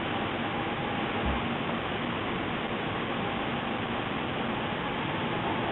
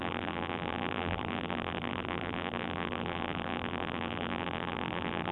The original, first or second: first